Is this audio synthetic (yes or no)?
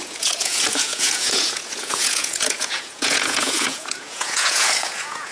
yes